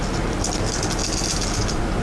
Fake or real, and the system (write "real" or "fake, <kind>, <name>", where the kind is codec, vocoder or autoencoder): real